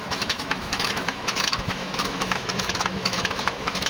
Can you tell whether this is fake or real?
fake